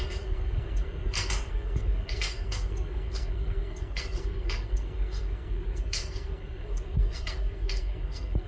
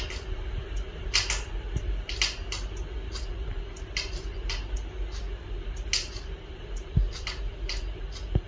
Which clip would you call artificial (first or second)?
first